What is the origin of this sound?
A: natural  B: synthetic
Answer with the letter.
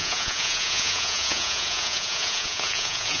B